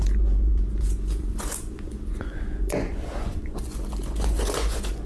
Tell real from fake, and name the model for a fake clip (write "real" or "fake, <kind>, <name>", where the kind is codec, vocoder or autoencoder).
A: fake, vocoder, Vocos